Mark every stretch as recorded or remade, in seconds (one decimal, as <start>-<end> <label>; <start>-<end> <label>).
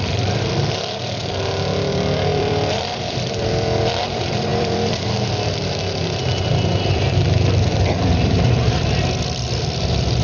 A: 0.0-1.2 remade; 1.2-1.9 recorded; 1.9-10.2 remade